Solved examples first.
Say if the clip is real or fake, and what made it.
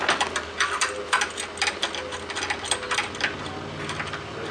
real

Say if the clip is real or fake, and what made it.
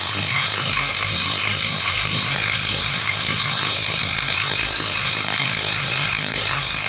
fake, codec, SNAC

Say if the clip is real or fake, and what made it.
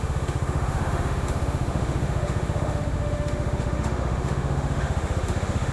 fake, autoencoder, DAC-VAE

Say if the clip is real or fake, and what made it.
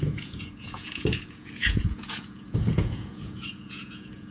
fake, vocoder, Vocos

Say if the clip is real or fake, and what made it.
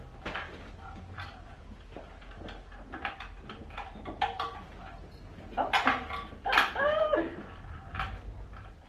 real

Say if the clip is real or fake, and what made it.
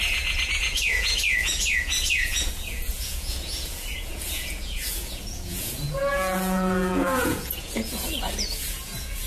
fake, vocoder, Vocos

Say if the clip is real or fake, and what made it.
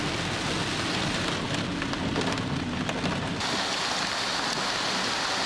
real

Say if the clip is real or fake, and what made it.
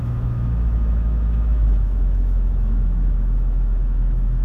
fake, autoencoder, DAC-VAE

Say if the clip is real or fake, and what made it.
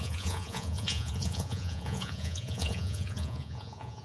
fake, vocoder, Vocos